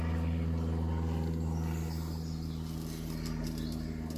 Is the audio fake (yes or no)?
no